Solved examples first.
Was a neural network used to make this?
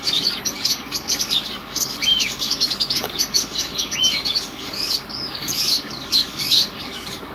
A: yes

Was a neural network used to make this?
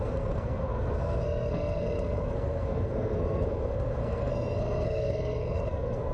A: yes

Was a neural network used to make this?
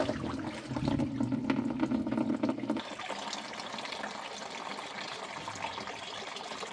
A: no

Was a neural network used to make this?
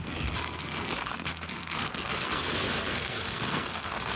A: yes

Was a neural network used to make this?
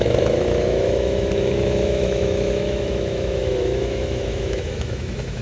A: yes